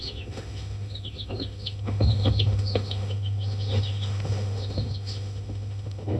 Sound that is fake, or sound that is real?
fake